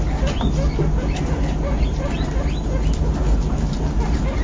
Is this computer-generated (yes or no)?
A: no